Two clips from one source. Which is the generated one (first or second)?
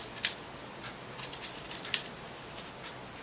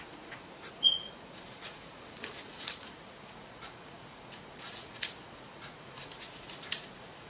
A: second